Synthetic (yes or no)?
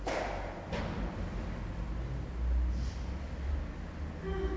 no